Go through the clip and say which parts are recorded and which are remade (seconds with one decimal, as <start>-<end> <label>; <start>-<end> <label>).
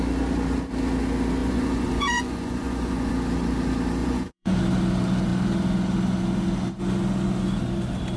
0.0-1.4 recorded; 1.4-3.1 remade; 3.1-4.0 recorded; 4.0-4.6 remade; 4.6-8.2 recorded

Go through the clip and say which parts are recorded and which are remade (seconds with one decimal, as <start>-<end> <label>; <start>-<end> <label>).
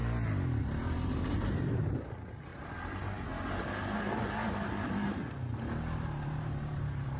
0.0-0.6 recorded; 0.6-2.5 remade; 2.5-5.8 recorded; 5.8-7.2 remade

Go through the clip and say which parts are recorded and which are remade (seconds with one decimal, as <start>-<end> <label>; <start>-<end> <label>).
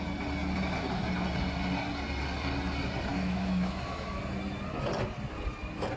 0.0-3.1 recorded; 3.1-4.2 remade; 4.2-6.0 recorded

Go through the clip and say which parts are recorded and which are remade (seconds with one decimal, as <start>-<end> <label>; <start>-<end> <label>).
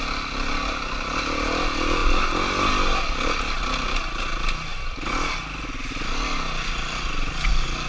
0.0-7.9 recorded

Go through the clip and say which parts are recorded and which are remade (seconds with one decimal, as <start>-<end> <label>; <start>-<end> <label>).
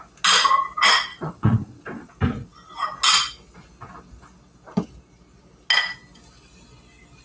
0.0-1.1 recorded; 1.1-2.1 remade; 2.1-7.2 recorded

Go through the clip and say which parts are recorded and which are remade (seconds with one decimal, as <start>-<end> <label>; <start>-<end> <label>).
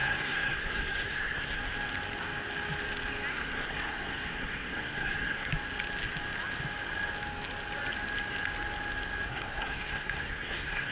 0.0-1.6 remade; 1.6-3.3 recorded; 3.3-5.5 remade; 5.5-9.3 recorded; 9.3-10.9 remade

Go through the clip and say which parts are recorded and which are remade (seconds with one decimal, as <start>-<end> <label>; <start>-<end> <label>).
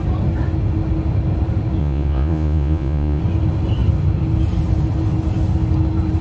0.0-1.8 recorded; 1.8-3.2 remade; 3.2-6.2 recorded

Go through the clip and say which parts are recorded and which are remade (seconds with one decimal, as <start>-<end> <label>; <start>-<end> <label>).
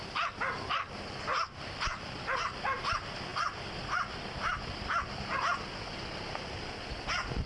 0.0-7.5 recorded